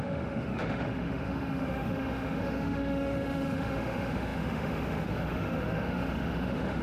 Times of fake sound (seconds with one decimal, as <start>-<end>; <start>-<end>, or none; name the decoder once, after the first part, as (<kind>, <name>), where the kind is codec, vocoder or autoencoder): 0.0-6.8 (autoencoder, DAC-VAE)